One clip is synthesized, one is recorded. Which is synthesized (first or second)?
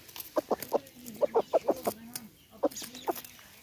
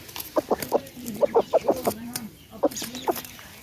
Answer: second